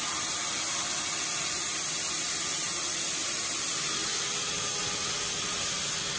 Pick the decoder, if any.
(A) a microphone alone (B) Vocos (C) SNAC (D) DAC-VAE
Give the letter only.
A